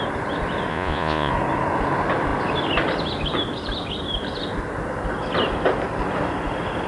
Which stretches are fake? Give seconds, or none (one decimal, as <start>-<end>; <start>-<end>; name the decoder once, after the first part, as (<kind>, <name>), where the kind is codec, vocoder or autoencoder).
0.7-1.3 (vocoder, Vocos)

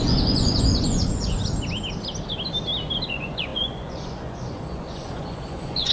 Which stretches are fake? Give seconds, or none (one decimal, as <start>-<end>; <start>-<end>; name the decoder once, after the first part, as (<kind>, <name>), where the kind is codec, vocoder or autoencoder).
0.0-1.4 (vocoder, Vocos); 3.1-5.9

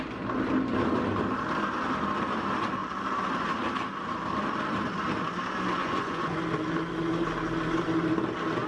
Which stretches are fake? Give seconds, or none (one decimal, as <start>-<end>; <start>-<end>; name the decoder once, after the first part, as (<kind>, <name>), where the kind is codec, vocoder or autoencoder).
5.8-6.4 (vocoder, Vocos)